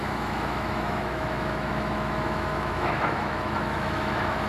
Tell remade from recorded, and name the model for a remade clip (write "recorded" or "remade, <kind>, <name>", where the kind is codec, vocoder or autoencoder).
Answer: remade, autoencoder, DAC-VAE